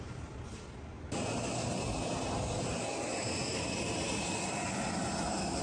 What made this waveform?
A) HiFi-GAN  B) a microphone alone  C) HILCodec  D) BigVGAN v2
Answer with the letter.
B